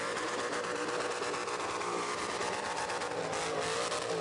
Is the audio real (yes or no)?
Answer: yes